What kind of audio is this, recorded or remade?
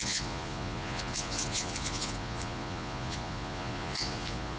remade